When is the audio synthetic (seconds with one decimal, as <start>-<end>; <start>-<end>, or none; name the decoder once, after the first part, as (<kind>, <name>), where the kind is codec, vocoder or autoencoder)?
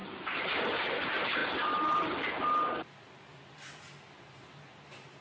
none